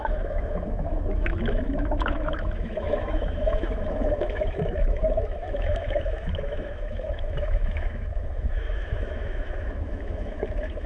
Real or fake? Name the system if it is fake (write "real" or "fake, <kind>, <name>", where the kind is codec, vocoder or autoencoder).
fake, autoencoder, DAC-VAE